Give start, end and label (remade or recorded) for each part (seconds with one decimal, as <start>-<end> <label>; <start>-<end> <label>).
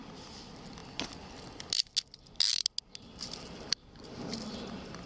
0.0-5.1 recorded